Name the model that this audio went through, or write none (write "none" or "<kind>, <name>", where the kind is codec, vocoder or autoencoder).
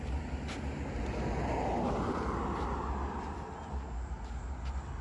none